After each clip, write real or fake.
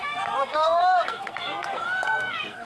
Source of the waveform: fake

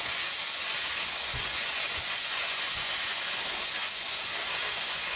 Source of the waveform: fake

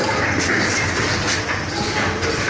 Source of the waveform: real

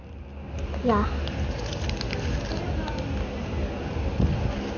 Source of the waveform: real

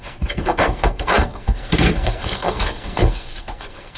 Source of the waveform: fake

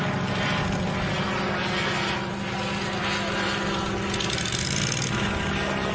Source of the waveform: real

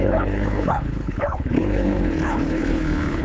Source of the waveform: fake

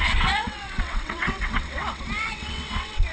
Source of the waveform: fake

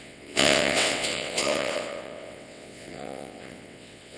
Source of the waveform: fake